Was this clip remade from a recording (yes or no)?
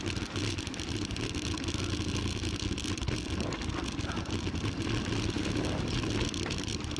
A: no